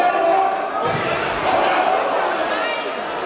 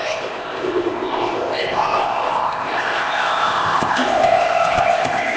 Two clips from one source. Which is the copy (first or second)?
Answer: second